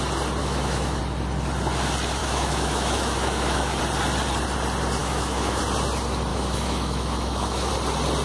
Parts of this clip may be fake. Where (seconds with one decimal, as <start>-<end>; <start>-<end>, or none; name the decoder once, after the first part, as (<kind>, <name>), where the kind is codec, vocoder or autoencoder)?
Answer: 0.4-1.0 (autoencoder, DAC-VAE); 2.2-3.8; 5.0-5.6; 6.3-7.7

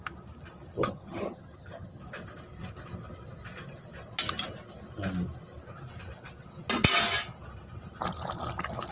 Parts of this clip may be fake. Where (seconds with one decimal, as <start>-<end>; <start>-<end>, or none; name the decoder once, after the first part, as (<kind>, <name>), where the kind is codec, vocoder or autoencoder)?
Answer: 0.8-2.0 (vocoder, HiFi-GAN)